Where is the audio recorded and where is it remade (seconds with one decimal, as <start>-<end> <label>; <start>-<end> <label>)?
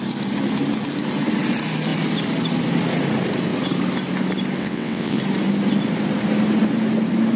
0.0-4.6 recorded; 4.6-5.2 remade; 5.2-7.4 recorded